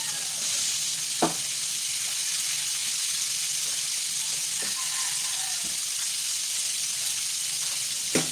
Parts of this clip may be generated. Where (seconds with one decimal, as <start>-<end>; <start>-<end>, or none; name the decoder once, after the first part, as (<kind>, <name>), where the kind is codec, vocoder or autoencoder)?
none